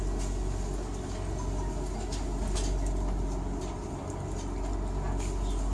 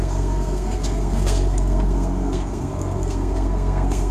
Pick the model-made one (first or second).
second